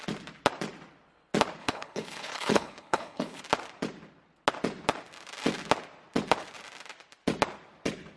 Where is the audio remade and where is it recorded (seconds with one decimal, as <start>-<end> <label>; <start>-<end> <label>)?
0.0-1.6 recorded; 1.6-3.4 remade; 3.4-8.2 recorded